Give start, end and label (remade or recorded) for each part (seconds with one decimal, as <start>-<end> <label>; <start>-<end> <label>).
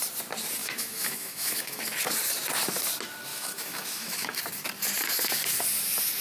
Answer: 0.0-0.6 recorded; 0.6-1.8 remade; 1.8-3.3 recorded; 3.3-4.4 remade; 4.4-6.2 recorded